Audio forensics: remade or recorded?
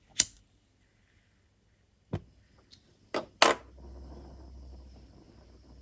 recorded